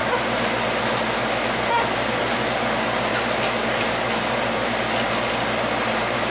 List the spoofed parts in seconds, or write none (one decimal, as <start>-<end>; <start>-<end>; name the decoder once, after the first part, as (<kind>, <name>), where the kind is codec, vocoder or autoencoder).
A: none